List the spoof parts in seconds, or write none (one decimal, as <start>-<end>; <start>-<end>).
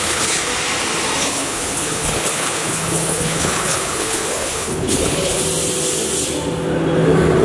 0.0-0.5; 1.2-5.4